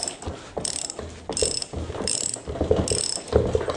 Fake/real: real